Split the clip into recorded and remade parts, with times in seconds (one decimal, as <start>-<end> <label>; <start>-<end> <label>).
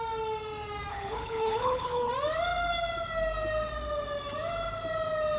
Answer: 0.0-0.9 recorded; 0.9-2.1 remade; 2.1-5.4 recorded